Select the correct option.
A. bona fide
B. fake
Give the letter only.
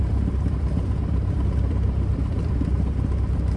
B